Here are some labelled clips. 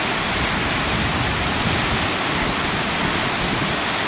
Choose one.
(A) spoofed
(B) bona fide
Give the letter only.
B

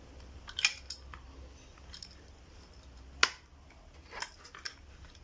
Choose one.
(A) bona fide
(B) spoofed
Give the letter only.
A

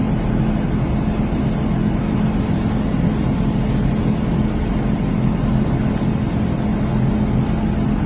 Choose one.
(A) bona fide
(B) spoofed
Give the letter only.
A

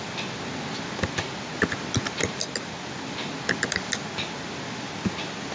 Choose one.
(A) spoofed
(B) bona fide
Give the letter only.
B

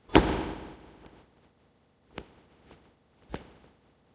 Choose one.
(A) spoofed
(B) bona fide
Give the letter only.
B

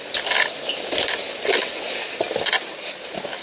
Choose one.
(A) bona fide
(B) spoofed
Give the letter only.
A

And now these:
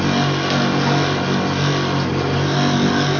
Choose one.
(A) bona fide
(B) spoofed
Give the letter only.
A